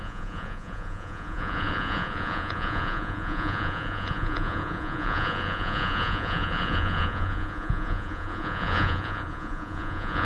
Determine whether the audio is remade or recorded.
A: remade